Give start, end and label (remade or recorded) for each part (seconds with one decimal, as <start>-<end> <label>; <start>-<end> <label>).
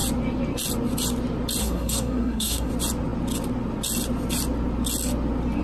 0.0-1.6 recorded; 1.6-2.7 remade; 2.7-5.6 recorded